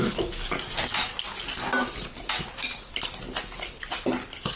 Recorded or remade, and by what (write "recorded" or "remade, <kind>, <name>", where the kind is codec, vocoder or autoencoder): recorded